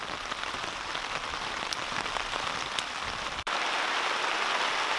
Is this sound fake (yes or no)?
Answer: yes